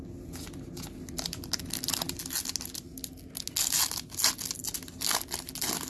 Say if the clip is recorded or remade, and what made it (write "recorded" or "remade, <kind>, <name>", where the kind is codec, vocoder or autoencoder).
recorded